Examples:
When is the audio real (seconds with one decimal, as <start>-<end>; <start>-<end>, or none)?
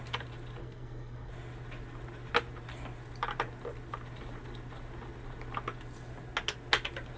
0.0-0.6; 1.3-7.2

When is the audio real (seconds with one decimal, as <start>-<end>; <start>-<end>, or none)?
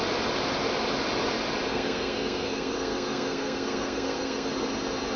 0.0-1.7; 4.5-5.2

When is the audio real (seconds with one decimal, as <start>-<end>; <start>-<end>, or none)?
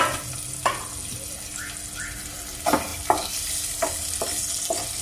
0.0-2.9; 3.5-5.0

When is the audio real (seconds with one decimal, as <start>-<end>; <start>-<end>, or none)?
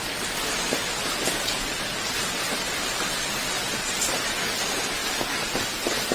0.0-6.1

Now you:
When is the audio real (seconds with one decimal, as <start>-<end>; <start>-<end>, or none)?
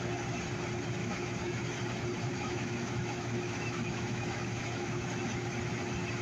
0.0-1.0; 1.6-2.3; 5.2-6.2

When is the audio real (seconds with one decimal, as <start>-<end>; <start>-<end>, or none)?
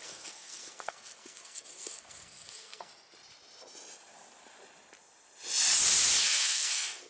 2.9-6.2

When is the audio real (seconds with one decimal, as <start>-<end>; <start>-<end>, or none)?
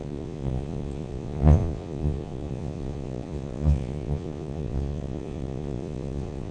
none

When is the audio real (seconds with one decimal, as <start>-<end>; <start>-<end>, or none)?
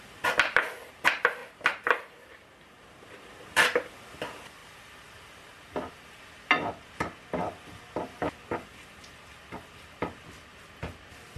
0.0-1.4; 3.9-11.4